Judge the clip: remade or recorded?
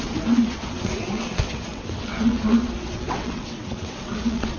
remade